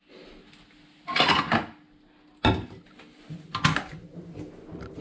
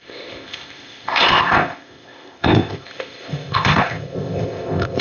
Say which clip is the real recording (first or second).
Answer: first